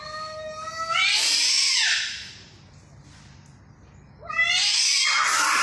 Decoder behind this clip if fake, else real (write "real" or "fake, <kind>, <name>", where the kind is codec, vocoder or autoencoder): real